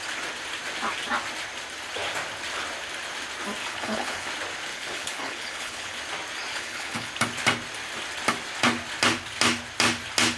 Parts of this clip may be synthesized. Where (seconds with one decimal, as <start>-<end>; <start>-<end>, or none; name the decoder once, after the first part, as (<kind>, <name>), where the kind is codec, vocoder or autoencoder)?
3.6-4.3 (codec, HILCodec); 4.7-6.0; 6.5-7.1